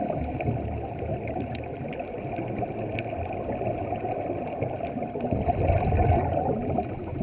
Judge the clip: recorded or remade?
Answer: recorded